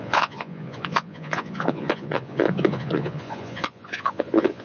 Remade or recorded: remade